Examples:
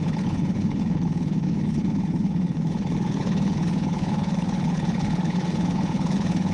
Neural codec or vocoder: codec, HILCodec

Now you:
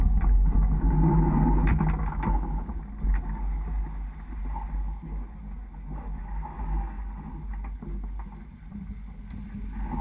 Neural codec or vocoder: none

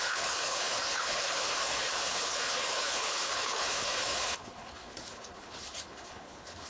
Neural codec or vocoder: codec, HILCodec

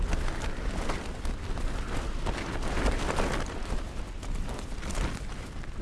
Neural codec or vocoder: none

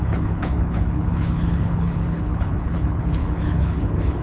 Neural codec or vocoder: codec, HILCodec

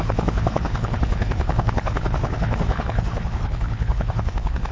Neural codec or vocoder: codec, HILCodec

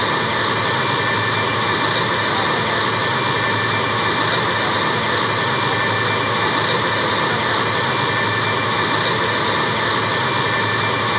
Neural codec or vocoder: none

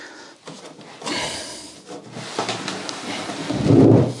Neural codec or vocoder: none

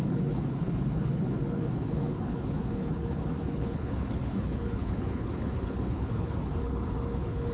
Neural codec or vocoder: codec, HILCodec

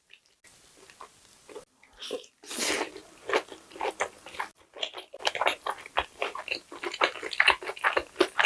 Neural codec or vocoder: none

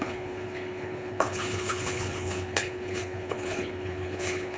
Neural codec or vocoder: codec, HILCodec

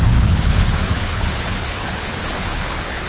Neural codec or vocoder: codec, HILCodec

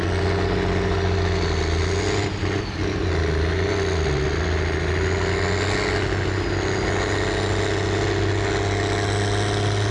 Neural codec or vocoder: none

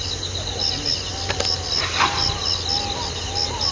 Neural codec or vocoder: none